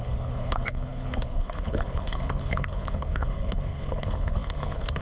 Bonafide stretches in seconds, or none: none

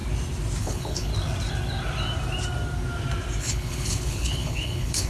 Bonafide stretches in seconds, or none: 0.0-0.6; 1.1-3.4

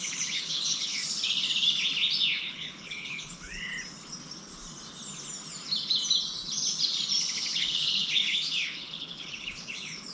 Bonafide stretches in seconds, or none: 1.0-2.5; 3.7-7.2

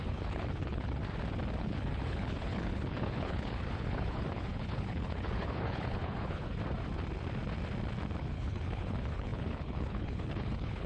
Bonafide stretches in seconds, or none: 1.0-1.6; 6.5-8.2

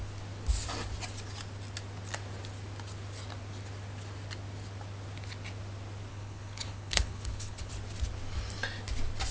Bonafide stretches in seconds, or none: 0.0-6.1; 7.7-9.3